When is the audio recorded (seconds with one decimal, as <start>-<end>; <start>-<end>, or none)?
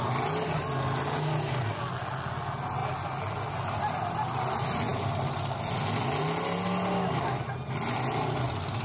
0.0-2.8; 3.5-8.8